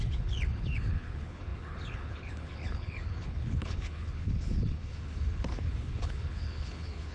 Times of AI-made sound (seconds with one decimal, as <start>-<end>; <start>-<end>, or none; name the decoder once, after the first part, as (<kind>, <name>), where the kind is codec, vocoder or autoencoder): 0.0-7.1 (codec, HILCodec)